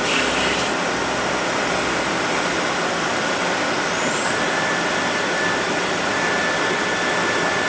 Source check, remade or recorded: recorded